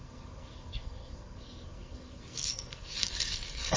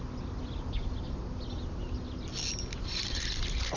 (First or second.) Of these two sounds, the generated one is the first